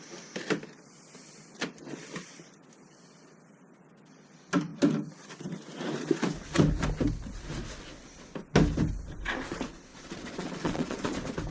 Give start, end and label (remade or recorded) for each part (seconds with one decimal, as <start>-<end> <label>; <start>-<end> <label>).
0.0-9.9 recorded; 9.9-11.1 remade; 11.1-11.5 recorded